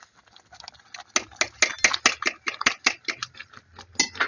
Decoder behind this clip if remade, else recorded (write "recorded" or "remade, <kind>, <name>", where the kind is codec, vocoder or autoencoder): recorded